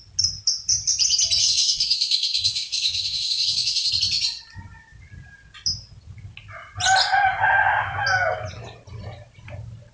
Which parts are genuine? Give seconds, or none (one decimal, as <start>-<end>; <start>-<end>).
0.0-1.4; 3.9-9.9